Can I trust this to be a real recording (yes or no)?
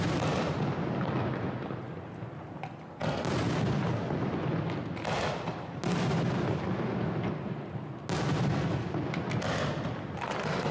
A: yes